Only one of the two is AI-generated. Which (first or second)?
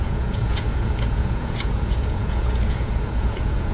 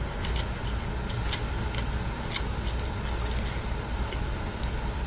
first